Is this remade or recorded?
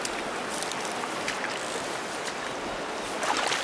recorded